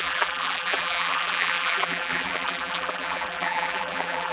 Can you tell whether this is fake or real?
fake